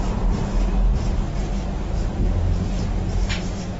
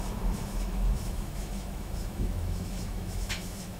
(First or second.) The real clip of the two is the first